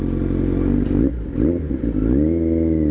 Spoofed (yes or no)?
no